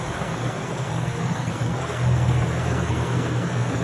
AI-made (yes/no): yes